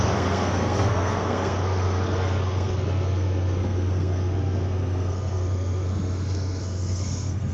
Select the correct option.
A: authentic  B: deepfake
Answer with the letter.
B